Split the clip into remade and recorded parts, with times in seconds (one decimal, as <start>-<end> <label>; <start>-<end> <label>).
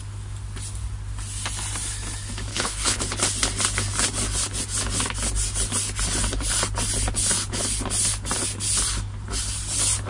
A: 0.0-2.5 recorded; 2.5-3.0 remade; 3.0-10.1 recorded